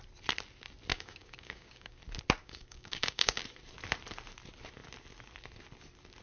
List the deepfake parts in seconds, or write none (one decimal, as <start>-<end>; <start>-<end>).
0.9-2.0; 2.4-3.4